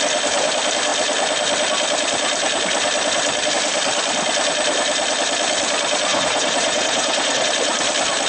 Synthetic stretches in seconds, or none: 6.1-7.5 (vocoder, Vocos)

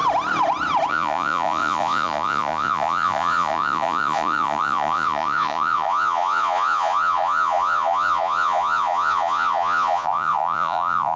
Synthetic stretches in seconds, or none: 0.9-11.2 (vocoder, Vocos)

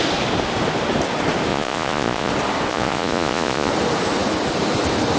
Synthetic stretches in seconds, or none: 1.5-2.3 (vocoder, Vocos); 2.7-3.7

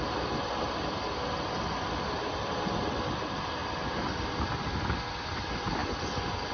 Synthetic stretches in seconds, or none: none

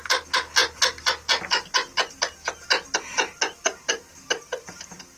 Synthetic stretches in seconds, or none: none

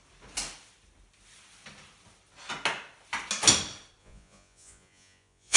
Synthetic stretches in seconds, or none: 4.0-5.6 (vocoder, Vocos)